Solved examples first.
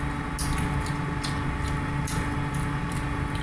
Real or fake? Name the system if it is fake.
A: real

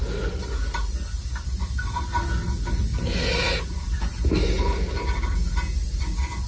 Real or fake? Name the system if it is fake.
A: real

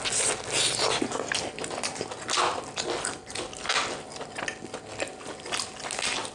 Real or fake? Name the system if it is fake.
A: real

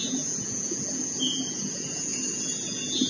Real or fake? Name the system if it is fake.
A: fake, vocoder, Vocos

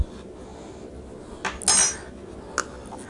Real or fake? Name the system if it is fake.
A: real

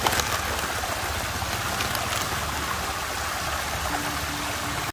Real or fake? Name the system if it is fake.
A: real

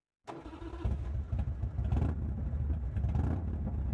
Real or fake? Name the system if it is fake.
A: real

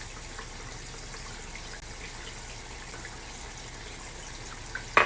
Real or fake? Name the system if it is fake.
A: real